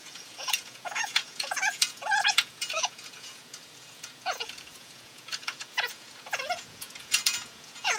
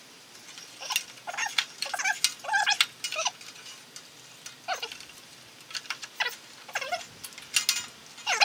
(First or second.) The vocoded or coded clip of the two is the first